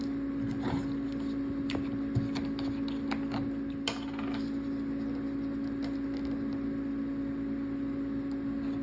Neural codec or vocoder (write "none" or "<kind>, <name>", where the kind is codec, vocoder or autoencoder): none